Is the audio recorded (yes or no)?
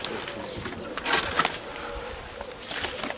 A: yes